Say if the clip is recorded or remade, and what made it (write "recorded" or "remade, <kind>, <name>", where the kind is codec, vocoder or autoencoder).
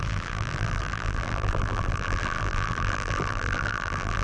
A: remade, vocoder, BigVGAN v2